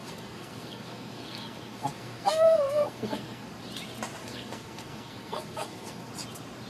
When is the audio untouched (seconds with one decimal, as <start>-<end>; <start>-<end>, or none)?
3.5-4.2; 6.1-6.7